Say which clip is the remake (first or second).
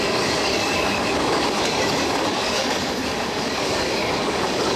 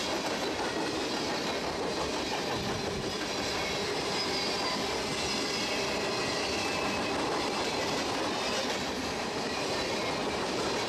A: first